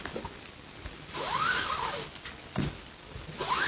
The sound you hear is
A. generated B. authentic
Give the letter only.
B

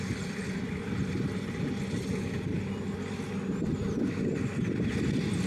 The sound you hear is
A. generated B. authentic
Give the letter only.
B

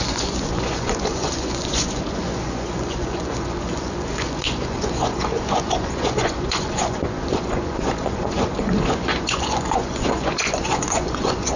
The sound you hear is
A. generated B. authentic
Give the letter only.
A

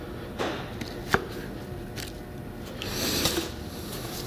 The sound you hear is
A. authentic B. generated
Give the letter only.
A